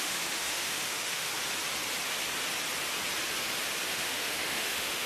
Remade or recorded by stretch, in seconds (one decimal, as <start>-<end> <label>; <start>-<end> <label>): 0.0-1.3 remade; 1.3-3.9 recorded; 3.9-5.1 remade